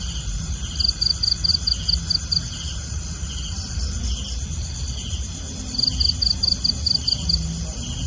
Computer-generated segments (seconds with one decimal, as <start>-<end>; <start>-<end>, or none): none